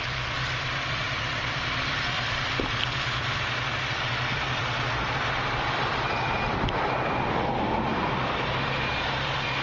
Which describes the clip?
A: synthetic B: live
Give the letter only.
A